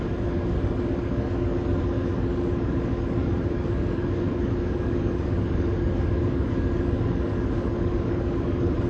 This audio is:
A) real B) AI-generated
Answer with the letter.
B